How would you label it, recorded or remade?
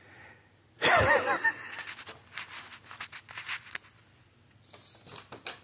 recorded